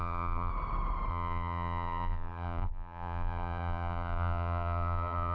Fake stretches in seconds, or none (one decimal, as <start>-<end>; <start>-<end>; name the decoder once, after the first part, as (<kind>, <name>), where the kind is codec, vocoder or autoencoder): 0.0-0.5 (vocoder, BigVGAN v2); 1.1-5.3